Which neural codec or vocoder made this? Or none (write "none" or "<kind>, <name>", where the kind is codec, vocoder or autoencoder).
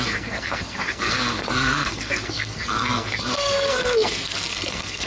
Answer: codec, SNAC